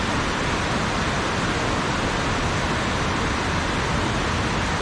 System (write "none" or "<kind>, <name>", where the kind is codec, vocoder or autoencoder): none